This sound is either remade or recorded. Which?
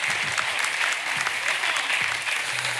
recorded